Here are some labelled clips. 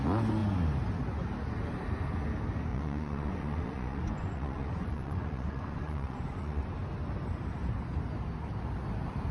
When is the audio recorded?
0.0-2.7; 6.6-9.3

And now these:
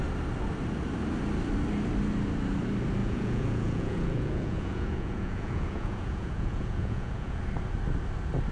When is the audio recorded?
0.0-3.0; 7.4-8.5

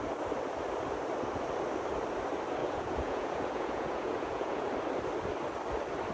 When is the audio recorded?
0.0-2.6; 4.7-6.1

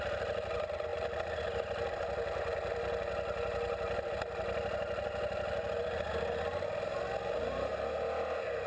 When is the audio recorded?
0.0-8.7